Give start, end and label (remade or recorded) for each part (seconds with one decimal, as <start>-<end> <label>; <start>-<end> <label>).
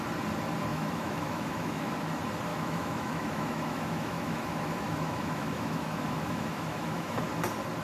0.0-0.7 recorded; 0.7-1.9 remade; 1.9-2.5 recorded; 2.5-7.2 remade; 7.2-7.8 recorded